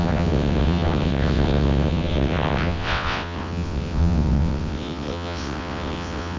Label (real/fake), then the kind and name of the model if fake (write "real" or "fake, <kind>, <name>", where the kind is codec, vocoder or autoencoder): fake, vocoder, WaveNeXt